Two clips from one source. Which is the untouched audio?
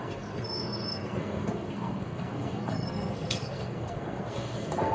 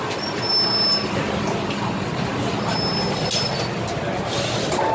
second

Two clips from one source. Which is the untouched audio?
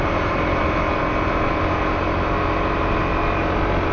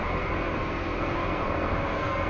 first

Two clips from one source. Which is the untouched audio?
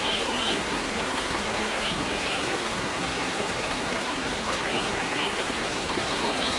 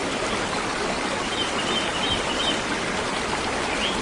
second